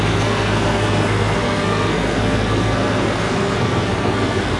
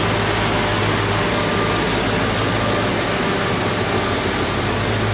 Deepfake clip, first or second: first